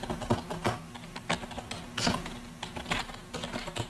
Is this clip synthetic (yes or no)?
no